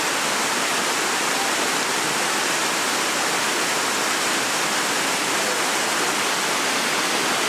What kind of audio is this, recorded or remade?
recorded